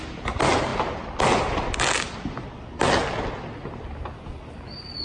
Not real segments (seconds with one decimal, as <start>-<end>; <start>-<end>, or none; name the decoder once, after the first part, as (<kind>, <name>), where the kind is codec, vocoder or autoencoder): none